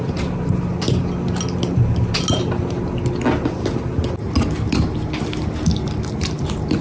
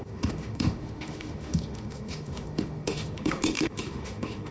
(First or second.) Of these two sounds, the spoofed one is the second